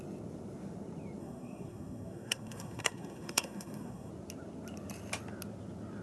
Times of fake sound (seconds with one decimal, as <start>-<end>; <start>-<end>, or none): 1.2-4.1